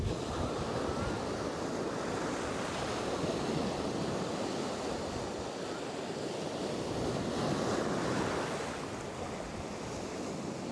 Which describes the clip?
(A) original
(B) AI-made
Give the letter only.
A